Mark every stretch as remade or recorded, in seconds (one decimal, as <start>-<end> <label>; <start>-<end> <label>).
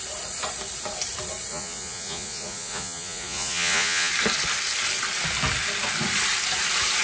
0.0-1.5 recorded; 1.5-4.1 remade; 4.1-7.0 recorded